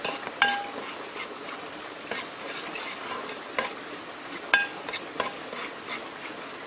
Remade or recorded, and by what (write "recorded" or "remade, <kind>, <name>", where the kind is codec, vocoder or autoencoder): recorded